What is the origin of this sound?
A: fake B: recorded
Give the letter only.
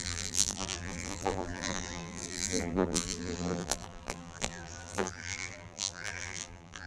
A